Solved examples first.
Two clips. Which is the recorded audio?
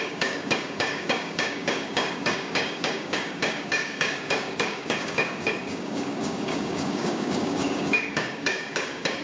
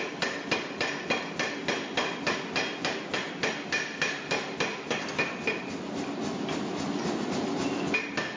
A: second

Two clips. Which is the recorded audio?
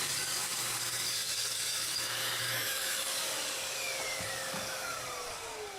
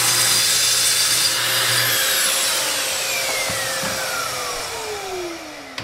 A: second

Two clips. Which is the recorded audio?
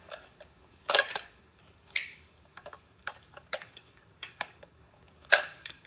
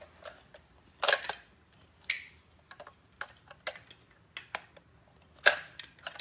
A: second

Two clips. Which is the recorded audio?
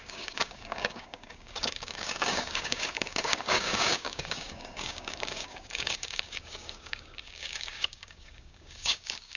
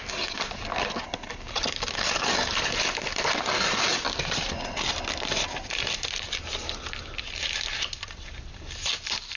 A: second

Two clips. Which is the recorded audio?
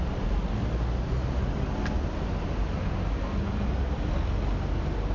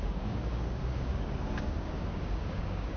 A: first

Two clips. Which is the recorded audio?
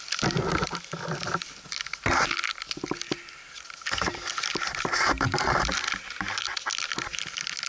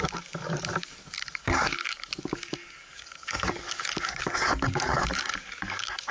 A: first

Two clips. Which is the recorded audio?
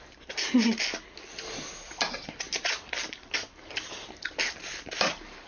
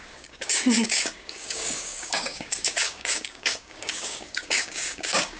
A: first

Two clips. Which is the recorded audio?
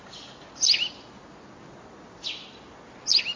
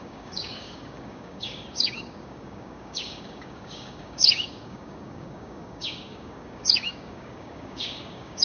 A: first